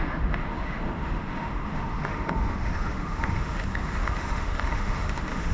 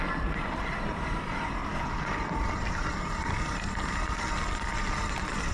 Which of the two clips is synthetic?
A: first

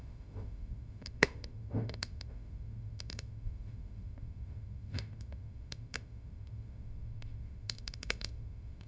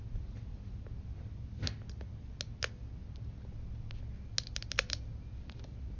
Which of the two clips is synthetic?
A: first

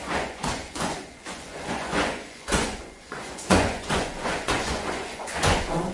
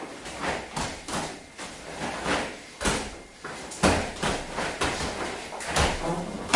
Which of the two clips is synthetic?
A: first